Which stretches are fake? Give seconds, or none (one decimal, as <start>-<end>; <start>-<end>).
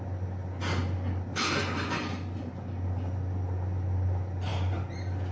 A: none